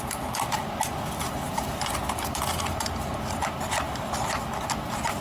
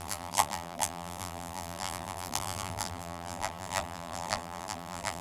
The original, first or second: first